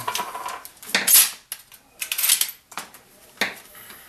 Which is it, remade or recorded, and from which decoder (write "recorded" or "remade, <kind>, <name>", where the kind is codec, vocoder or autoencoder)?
recorded